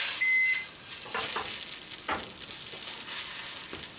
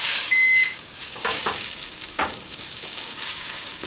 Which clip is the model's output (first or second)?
second